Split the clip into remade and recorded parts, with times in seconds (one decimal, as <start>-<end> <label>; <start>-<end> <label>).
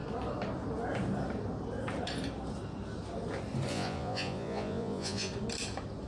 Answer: 0.0-3.7 recorded; 3.7-5.3 remade; 5.3-6.1 recorded